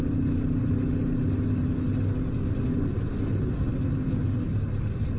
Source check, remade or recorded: recorded